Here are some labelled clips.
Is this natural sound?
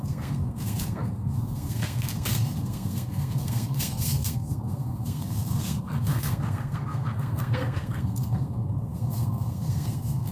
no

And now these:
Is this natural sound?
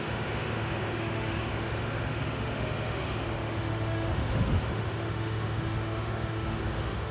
no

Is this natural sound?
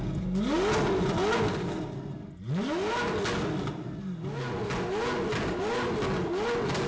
yes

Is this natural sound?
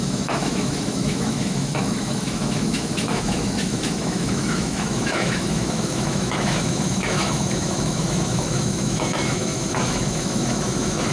no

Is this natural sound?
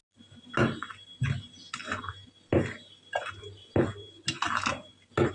yes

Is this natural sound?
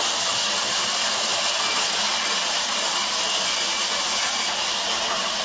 yes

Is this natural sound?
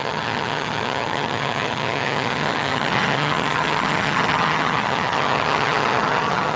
no